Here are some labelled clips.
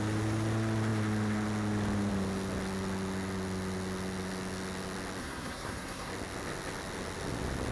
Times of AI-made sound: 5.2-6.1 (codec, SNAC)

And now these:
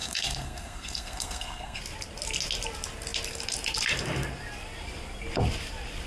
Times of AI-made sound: 0.0-1.8 (codec, SNAC)